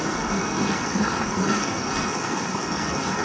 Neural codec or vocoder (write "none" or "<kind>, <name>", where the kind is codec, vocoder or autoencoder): codec, SNAC